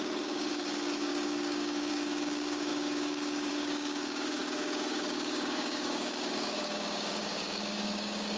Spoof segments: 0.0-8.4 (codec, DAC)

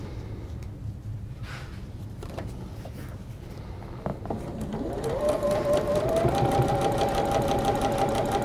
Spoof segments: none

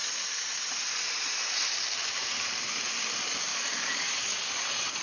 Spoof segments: 3.5-4.5 (codec, DAC)

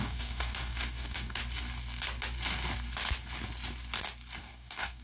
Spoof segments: 0.0-1.4 (codec, DAC); 4.4-5.0

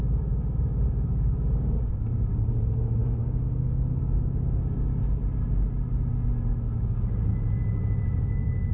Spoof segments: 0.0-5.2 (codec, DAC); 6.5-7.3

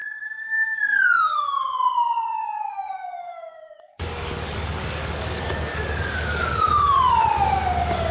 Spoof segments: 0.0-1.6 (codec, DAC); 2.3-6.6

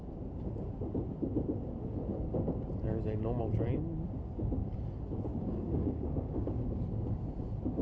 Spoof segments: 5.3-6.6 (codec, DAC)

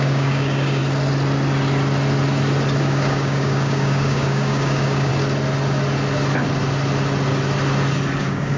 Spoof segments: 0.0-0.8 (codec, DAC); 2.8-5.1; 8.2-8.6